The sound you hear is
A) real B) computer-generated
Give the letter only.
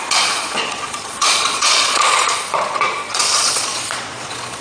B